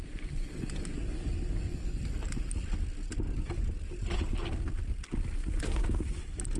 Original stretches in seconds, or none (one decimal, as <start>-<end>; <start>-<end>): 0.0-6.6